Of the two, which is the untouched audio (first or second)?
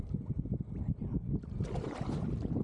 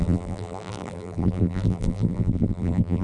first